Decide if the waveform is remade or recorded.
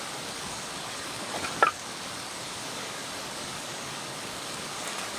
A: remade